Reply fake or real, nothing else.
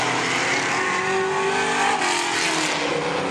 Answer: real